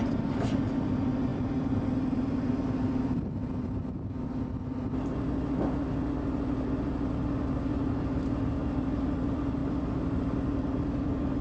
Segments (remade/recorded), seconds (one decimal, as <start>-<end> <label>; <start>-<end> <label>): 0.0-1.3 recorded; 1.3-3.8 remade; 3.8-9.6 recorded; 9.6-11.0 remade; 11.0-11.4 recorded